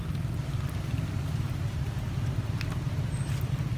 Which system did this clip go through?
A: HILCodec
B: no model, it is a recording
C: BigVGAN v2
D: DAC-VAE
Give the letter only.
B